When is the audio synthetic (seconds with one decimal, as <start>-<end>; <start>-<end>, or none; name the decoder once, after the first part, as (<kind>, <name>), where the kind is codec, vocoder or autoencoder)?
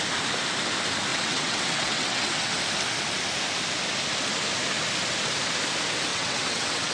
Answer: 1.1-2.5 (vocoder, WaveNeXt); 6.1-6.9